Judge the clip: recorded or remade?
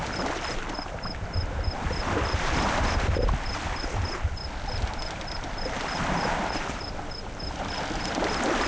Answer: recorded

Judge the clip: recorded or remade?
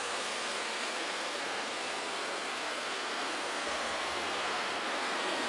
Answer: remade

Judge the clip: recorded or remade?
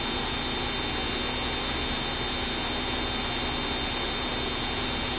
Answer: recorded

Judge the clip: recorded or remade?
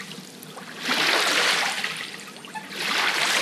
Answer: recorded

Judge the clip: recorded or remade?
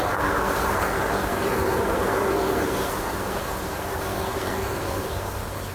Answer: remade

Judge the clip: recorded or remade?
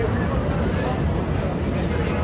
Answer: recorded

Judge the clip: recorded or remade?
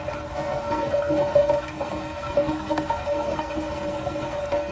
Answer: remade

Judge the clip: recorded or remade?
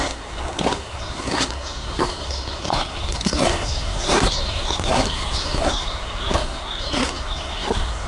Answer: remade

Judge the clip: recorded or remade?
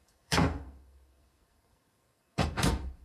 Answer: remade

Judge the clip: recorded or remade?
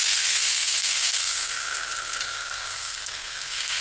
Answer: remade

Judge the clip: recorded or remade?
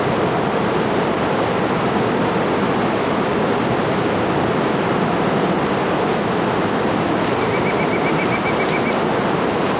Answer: recorded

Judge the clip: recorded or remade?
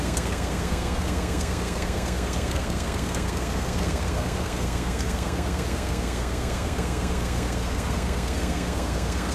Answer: remade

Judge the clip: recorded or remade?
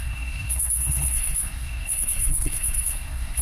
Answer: remade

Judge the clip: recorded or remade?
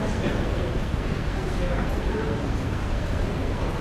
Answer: remade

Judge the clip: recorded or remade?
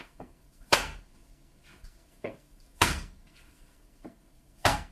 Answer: remade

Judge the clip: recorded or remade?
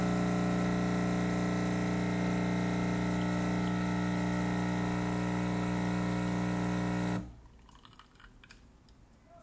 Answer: recorded